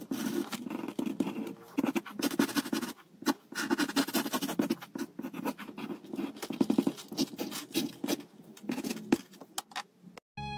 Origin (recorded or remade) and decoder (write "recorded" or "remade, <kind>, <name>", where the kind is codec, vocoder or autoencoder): recorded